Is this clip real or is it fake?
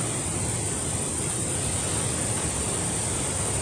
real